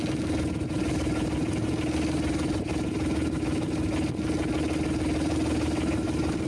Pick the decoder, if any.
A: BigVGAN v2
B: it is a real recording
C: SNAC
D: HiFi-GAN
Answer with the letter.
B